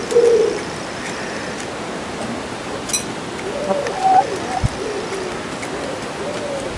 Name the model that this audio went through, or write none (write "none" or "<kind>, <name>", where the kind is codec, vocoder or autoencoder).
none